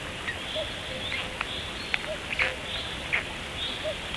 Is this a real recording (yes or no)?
yes